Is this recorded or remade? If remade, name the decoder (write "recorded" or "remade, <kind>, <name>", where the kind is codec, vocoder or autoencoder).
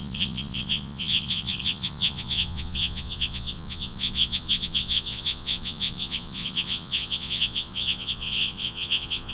remade, vocoder, Vocos